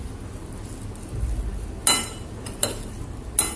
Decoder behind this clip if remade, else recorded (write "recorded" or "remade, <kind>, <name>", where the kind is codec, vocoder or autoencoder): recorded